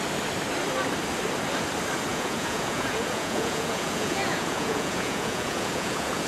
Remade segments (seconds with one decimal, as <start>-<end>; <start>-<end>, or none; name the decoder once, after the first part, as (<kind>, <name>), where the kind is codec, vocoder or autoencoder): 2.1-6.3 (vocoder, Vocos)